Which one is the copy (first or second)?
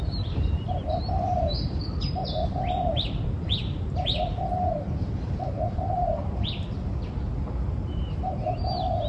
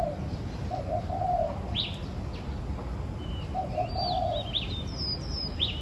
first